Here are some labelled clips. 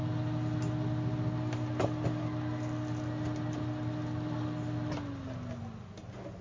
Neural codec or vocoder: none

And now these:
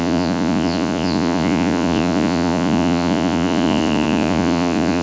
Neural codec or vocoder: vocoder, Vocos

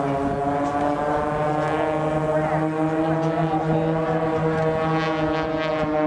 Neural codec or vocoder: none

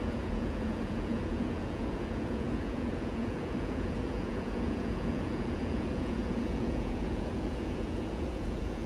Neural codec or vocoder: vocoder, Vocos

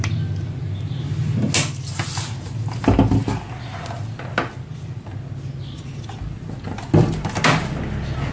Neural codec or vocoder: none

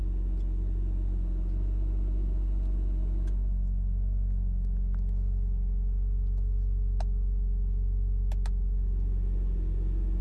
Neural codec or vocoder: none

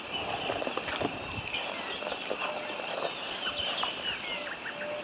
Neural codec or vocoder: none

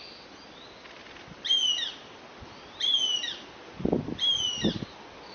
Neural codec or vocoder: none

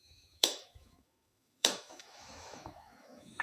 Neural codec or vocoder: autoencoder, DAC-VAE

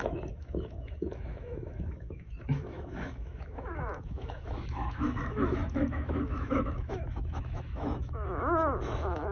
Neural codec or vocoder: autoencoder, DAC-VAE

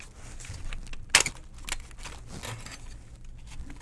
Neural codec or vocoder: none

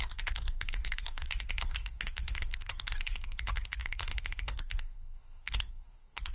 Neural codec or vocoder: codec, SNAC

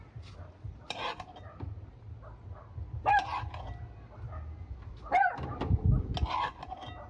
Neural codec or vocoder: none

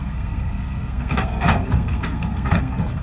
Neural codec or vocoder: codec, SNAC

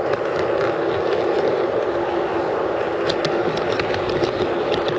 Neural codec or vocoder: none